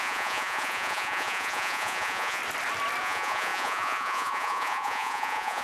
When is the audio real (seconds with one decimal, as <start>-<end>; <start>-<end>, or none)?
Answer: 2.4-3.0

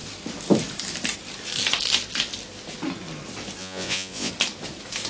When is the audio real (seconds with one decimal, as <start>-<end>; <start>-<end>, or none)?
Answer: 0.0-3.6; 4.3-5.1